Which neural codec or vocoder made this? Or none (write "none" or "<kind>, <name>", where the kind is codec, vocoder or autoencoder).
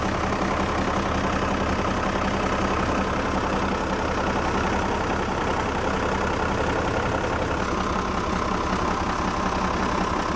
none